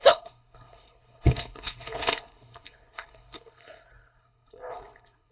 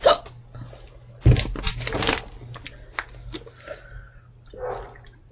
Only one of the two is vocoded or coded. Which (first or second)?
first